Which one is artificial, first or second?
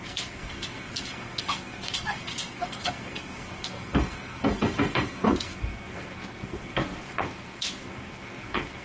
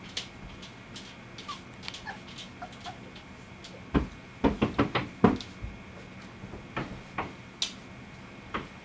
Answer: first